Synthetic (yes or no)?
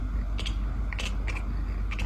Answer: no